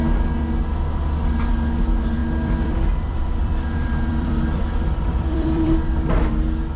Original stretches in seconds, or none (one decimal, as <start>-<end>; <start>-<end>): 0.0-2.2; 6.3-6.8